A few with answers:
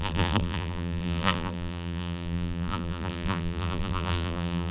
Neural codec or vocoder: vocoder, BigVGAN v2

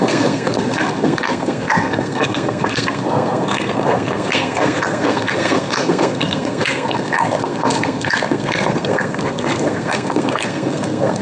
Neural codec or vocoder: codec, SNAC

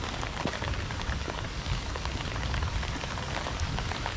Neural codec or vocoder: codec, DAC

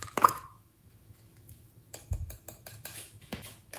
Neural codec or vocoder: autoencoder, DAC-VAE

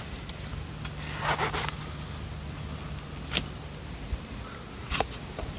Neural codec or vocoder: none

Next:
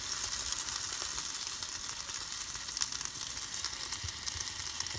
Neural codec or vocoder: none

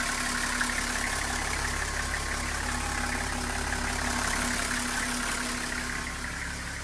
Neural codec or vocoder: none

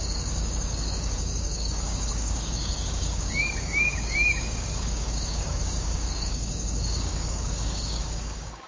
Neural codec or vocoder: codec, DAC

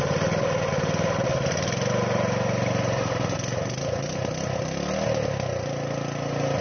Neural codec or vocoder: none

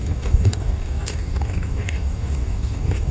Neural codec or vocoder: codec, DAC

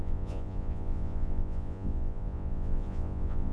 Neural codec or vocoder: vocoder, Vocos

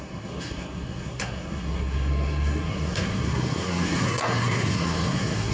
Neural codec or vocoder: codec, SNAC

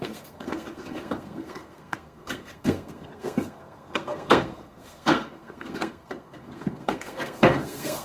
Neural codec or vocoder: codec, SNAC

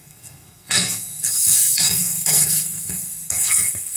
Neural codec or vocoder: codec, SNAC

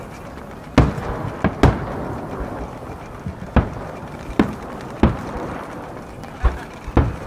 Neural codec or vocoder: none